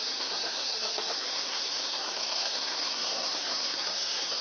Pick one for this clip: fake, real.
fake